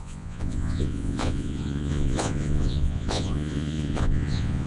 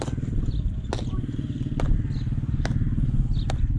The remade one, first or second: first